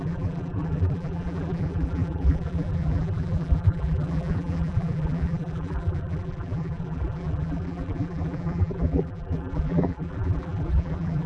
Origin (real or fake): fake